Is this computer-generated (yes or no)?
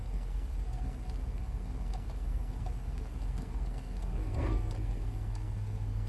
yes